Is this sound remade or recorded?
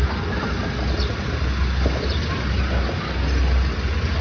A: recorded